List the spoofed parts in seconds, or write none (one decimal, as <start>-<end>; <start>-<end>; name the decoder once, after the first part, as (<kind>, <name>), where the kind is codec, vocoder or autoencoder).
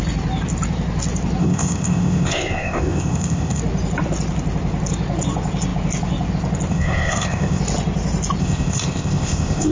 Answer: 1.4-3.6 (codec, ZipCodec); 6.7-7.6; 8.4-9.7